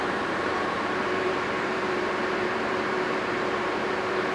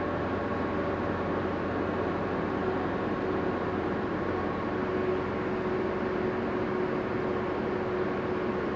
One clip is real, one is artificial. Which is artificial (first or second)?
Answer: first